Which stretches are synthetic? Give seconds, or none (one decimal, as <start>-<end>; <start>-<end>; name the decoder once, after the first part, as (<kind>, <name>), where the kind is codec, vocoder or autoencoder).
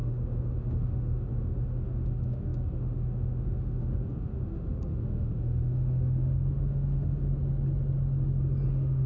0.0-7.3 (autoencoder, DAC-VAE); 8.7-9.1